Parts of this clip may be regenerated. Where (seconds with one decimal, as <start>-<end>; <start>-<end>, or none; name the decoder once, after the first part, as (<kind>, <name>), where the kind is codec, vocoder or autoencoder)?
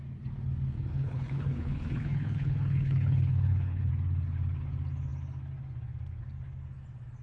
0.8-3.9 (codec, HILCodec)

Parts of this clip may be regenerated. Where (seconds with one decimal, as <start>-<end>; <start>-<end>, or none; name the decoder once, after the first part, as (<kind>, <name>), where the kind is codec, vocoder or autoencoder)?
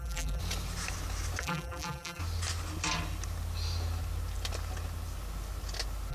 0.0-0.4 (vocoder, BigVGAN v2); 1.4-2.2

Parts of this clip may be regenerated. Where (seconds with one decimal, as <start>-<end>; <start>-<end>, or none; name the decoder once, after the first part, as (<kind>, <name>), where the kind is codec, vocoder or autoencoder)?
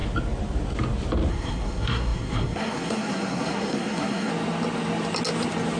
1.3-4.3 (codec, SNAC)